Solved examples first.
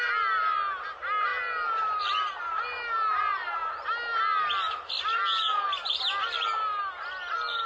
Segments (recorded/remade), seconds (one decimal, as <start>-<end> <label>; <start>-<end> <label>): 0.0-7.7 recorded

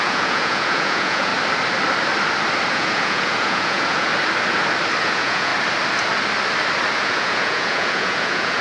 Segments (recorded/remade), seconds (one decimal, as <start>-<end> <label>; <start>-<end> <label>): 0.0-1.3 remade; 1.3-2.7 recorded; 2.7-4.1 remade; 4.1-5.0 recorded; 5.0-5.5 remade; 5.5-7.0 recorded; 7.0-8.6 remade

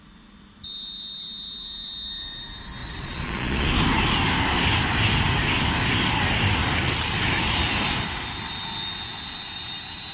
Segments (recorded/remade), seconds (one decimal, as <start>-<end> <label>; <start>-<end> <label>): 0.0-2.8 recorded; 2.8-3.7 remade; 3.7-10.1 recorded

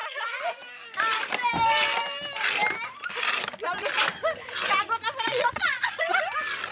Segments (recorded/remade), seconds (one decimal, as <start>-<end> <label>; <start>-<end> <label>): 0.0-5.3 recorded; 5.3-6.1 remade; 6.1-6.7 recorded

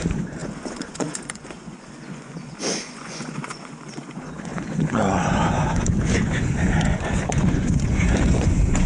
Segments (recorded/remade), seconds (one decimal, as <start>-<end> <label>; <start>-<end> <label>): 0.0-8.9 remade